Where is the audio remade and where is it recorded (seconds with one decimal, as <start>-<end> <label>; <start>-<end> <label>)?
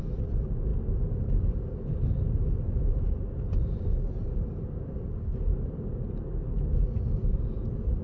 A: 0.0-8.0 recorded